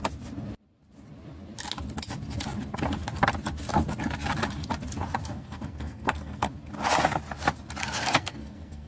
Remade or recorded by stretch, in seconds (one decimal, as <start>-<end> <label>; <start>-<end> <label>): 0.0-5.2 recorded; 5.2-6.5 remade; 6.5-7.8 recorded; 7.8-8.9 remade